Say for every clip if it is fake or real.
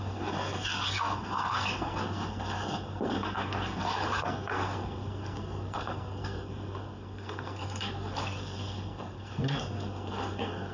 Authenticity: fake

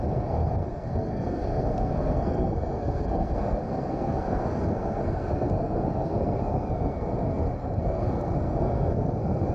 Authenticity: fake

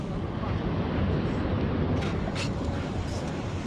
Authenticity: real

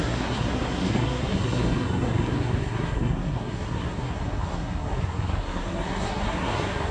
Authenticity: fake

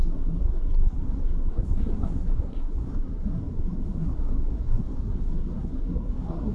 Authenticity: fake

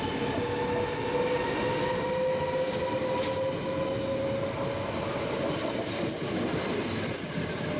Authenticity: real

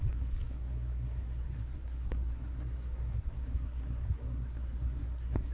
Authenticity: fake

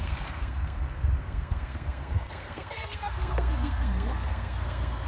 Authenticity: fake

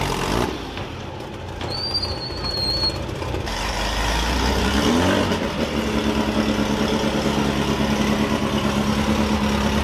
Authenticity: real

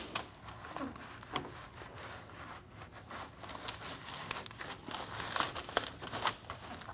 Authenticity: real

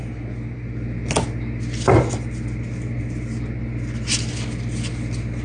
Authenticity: real